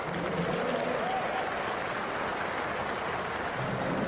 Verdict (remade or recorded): recorded